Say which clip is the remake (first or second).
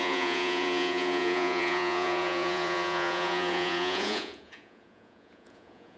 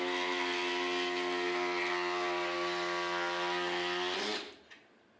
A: first